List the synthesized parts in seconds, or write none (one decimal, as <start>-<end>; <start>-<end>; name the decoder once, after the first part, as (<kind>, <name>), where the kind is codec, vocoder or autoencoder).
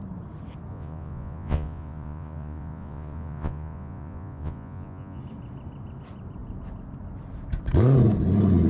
0.7-5.2 (vocoder, Vocos)